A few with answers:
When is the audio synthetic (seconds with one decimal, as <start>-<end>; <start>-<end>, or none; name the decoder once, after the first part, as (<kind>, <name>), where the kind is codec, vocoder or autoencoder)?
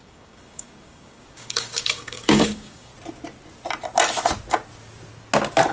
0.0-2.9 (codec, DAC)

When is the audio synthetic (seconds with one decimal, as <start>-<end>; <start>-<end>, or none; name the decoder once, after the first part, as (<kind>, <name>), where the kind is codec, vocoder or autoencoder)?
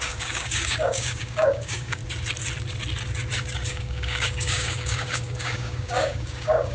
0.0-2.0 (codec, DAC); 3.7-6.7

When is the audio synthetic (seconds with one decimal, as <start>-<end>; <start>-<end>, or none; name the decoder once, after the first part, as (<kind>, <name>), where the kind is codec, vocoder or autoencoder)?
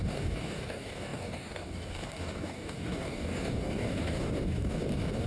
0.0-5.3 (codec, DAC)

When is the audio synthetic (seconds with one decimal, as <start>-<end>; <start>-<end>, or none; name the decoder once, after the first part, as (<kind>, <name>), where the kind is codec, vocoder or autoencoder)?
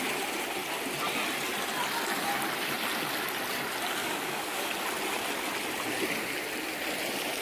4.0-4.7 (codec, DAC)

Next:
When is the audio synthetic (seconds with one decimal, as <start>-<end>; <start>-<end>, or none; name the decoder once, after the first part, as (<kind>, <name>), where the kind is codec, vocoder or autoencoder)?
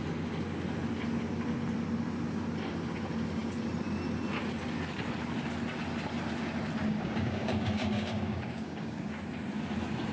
6.8-9.2 (codec, DAC)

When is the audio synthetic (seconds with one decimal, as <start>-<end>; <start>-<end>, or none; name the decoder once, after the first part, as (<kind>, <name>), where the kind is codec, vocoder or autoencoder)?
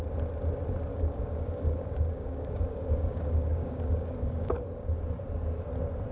0.9-4.5 (codec, DAC)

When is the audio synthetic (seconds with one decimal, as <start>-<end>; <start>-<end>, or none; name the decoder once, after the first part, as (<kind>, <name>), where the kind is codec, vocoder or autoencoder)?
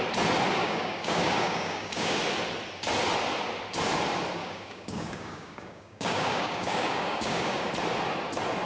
0.6-2.2 (codec, DAC); 4.4-7.7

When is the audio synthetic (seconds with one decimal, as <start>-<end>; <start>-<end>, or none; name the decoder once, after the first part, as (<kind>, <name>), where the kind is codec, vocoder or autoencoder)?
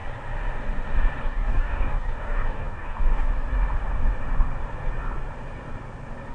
1.2-3.3 (codec, DAC)